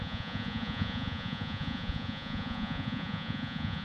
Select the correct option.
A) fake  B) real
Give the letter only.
A